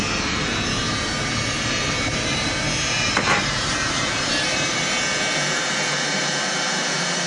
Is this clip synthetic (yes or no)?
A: yes